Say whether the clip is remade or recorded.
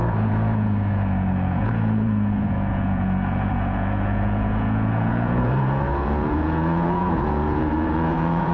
remade